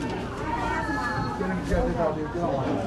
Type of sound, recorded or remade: recorded